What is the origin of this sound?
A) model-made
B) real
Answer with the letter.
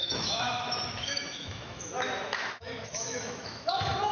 A